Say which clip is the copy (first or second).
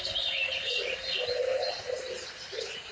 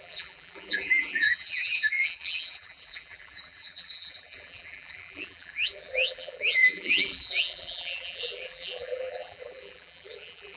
second